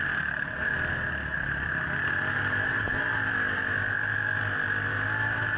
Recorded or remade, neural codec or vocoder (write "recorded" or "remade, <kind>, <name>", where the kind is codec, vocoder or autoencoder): recorded